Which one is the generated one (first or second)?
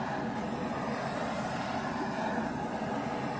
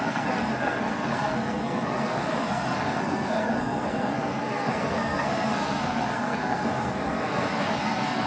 second